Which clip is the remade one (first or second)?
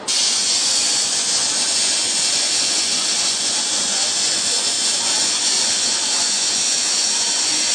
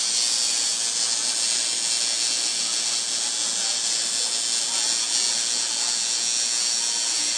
first